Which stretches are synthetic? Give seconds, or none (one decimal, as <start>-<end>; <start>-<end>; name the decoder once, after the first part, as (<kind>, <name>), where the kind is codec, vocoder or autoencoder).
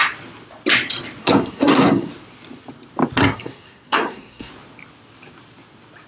1.2-2.1 (codec, SNAC); 3.2-4.5